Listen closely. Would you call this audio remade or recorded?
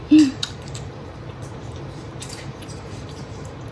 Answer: remade